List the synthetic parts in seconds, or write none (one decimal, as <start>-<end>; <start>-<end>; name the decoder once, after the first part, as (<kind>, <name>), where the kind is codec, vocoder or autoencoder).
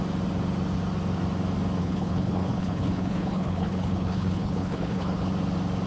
1.8-5.3 (codec, HILCodec)